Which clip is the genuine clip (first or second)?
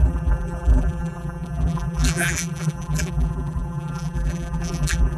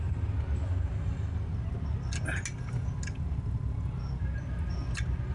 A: second